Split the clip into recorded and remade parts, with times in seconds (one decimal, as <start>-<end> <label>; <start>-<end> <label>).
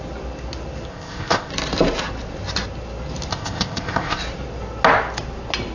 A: 0.0-0.9 recorded; 0.9-1.5 remade; 1.5-3.3 recorded; 3.3-4.2 remade; 4.2-5.7 recorded